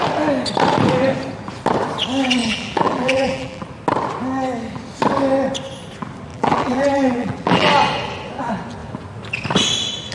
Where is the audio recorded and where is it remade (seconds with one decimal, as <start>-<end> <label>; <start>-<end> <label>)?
0.0-2.4 recorded; 2.4-3.6 remade; 3.6-6.3 recorded; 6.3-7.7 remade; 7.7-10.1 recorded